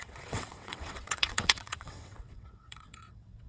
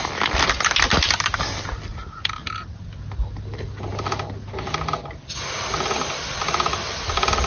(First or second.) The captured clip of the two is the second